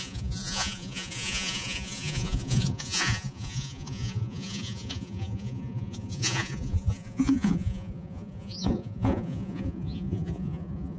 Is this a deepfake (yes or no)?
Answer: yes